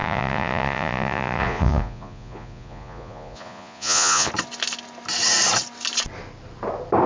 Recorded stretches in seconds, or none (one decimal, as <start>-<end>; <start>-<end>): 4.3-7.1